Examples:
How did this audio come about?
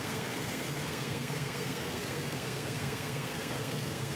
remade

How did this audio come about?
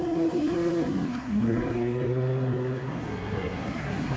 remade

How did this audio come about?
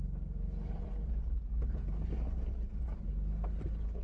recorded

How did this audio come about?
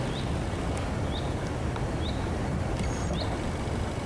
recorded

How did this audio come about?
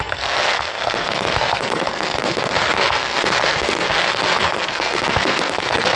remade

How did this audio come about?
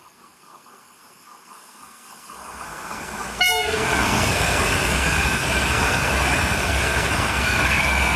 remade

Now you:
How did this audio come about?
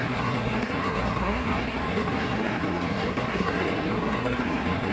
remade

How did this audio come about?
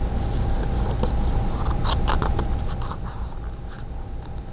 recorded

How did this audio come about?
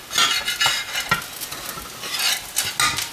recorded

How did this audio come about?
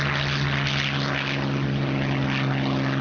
recorded